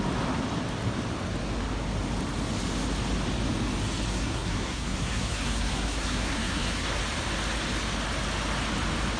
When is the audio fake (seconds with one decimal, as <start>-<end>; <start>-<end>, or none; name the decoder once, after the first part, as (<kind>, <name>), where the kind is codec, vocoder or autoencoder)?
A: 4.1-7.0 (codec, SNAC)